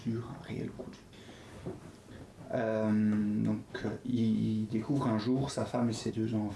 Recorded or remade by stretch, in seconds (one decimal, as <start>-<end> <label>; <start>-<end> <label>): 0.0-4.1 recorded; 4.1-6.1 remade; 6.1-6.6 recorded